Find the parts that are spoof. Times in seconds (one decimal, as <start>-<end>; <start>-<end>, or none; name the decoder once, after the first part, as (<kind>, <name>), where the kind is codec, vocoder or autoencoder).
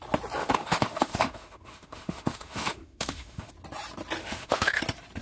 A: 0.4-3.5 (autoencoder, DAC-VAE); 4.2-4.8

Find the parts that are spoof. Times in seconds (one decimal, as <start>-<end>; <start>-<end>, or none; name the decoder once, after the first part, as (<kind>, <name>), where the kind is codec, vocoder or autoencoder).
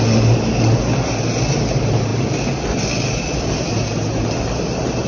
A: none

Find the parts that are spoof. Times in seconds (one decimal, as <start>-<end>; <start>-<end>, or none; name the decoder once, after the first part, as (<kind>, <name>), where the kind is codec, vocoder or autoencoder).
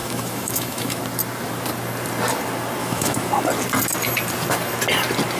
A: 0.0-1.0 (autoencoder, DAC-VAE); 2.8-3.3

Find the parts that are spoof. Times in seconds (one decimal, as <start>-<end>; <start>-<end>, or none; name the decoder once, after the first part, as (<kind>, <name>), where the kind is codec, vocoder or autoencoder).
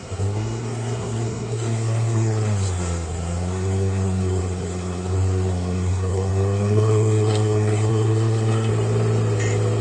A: 0.0-8.7 (codec, SNAC)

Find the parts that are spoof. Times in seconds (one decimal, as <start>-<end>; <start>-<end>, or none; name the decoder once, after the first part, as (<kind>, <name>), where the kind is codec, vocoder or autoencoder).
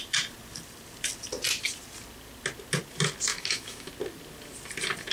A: 3.3-3.9 (autoencoder, DAC-VAE)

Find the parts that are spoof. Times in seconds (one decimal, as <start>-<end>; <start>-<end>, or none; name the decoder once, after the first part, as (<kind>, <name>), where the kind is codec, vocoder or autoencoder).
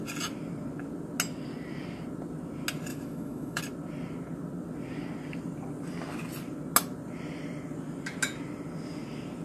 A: 2.9-3.6 (autoencoder, DAC-VAE)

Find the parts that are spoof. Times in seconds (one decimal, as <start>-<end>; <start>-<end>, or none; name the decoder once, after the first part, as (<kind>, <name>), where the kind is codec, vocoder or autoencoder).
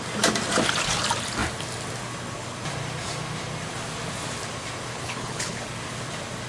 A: 4.9-5.6 (codec, HILCodec)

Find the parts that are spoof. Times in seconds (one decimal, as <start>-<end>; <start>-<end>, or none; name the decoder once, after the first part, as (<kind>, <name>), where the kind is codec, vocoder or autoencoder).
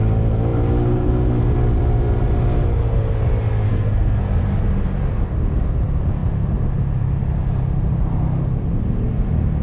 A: 3.7-4.2 (codec, SNAC)